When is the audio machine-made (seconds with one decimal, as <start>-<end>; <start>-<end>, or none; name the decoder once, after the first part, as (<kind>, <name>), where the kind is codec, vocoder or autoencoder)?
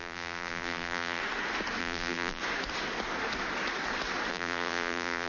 0.0-1.2 (vocoder, BigVGAN v2); 1.8-2.4; 4.3-5.3